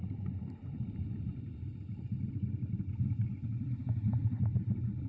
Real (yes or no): yes